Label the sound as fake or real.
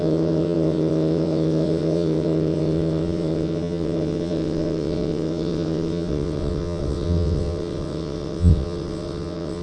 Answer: fake